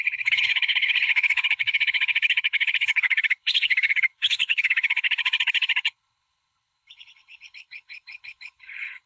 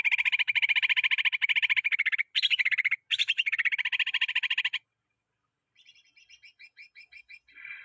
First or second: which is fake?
first